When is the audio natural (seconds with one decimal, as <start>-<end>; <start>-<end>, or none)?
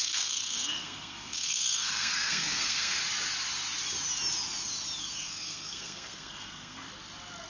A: 3.0-5.0; 6.9-7.5